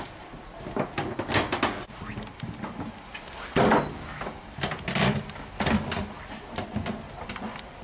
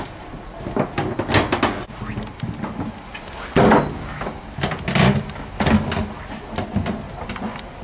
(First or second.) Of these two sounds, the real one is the second